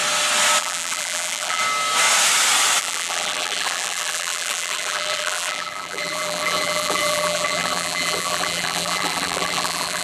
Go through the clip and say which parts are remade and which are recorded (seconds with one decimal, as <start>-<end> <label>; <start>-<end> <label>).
0.0-0.6 recorded; 0.6-1.6 remade; 1.6-2.8 recorded; 2.8-10.0 remade